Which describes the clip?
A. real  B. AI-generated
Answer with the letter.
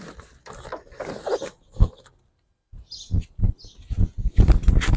A